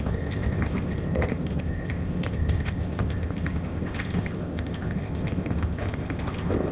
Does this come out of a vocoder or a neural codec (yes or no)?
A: yes